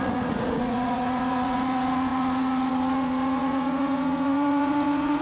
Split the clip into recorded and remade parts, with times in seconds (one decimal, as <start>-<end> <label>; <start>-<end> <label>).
0.0-5.2 remade